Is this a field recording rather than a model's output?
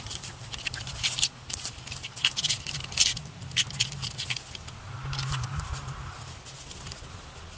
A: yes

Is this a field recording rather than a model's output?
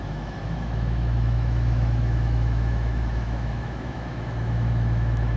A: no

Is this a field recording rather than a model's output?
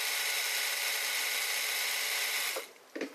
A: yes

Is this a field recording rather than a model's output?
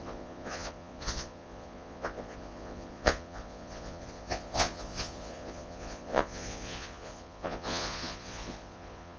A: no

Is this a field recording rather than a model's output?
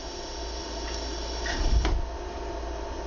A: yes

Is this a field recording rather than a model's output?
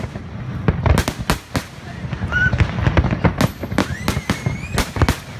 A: yes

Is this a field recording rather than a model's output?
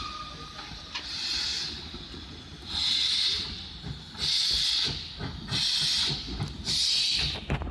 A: yes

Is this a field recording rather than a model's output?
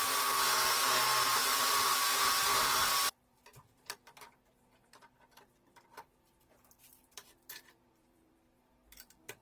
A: no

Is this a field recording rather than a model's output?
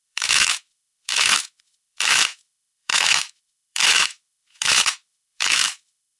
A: no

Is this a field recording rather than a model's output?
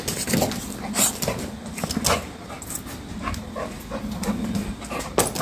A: yes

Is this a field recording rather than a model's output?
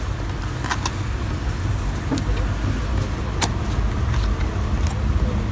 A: yes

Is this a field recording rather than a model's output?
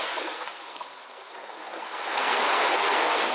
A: no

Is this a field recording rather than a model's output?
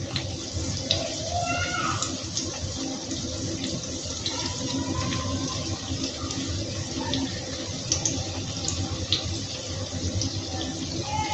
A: yes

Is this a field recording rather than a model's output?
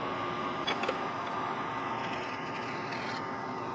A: yes